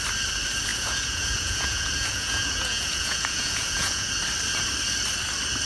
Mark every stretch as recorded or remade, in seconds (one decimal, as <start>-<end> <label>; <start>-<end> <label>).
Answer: 0.0-0.7 recorded; 0.7-4.1 remade; 4.1-5.7 recorded